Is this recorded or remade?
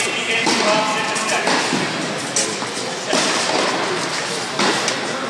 recorded